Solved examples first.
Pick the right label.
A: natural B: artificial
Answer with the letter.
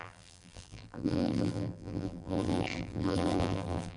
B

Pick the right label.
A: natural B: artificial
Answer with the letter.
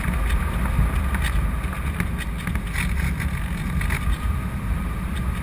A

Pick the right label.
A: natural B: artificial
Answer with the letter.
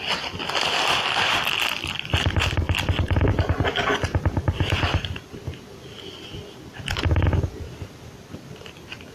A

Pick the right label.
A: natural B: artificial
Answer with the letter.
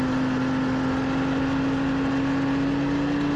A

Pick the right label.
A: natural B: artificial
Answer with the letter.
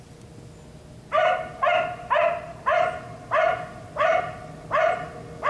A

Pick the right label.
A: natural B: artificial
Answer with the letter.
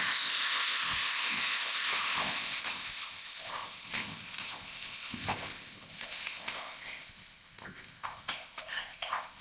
B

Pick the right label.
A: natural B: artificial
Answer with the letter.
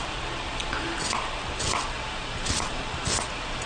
A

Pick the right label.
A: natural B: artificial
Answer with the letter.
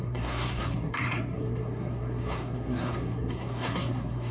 B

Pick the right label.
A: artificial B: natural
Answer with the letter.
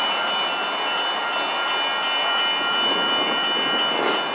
B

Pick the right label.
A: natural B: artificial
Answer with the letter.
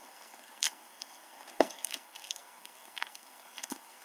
B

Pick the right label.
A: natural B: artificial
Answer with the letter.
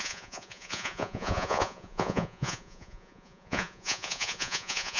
B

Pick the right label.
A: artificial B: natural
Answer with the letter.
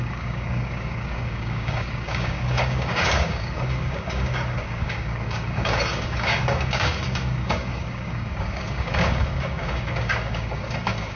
A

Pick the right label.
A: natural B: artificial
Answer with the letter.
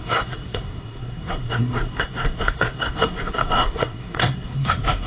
B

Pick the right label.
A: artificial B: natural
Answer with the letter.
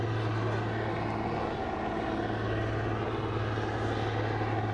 B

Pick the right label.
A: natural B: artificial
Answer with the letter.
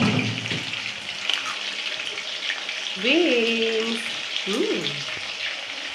A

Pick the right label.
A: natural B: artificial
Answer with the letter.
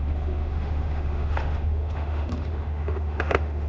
B